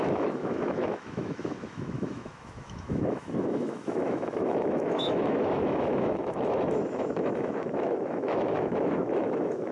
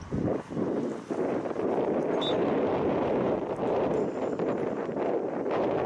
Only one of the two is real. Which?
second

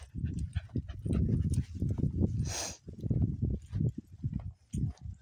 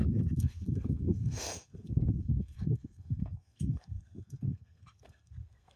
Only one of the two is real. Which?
first